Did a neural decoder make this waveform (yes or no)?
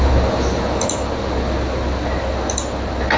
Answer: no